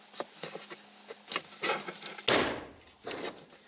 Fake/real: real